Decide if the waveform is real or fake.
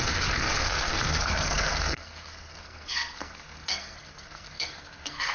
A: fake